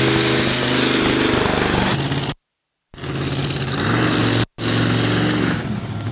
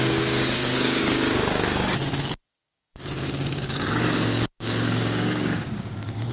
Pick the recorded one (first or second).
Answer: first